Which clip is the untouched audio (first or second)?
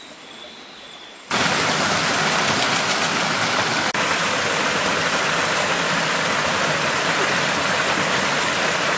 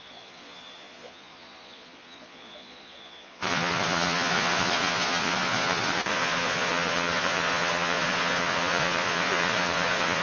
first